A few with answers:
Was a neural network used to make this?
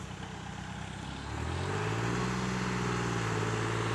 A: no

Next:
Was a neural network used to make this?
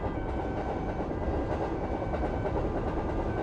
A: no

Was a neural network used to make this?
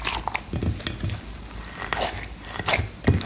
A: no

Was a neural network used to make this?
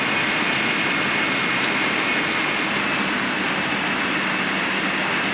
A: no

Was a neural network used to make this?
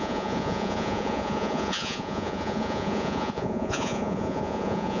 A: yes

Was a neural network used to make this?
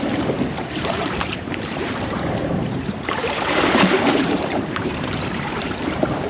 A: yes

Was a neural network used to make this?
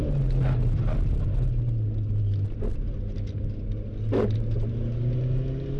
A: no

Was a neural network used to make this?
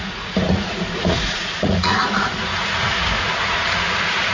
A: yes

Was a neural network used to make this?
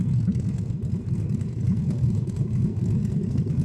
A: yes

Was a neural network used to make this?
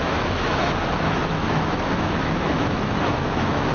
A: yes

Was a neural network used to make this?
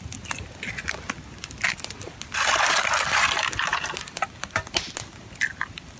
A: no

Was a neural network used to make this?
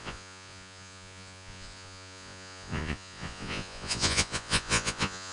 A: yes